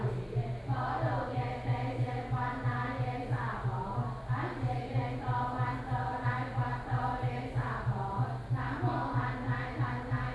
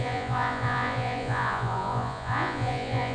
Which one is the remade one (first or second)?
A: second